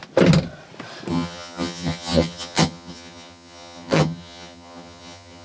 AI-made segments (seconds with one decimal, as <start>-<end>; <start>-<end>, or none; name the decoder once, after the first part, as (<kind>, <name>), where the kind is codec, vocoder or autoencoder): 1.1-5.4 (vocoder, HiFi-GAN)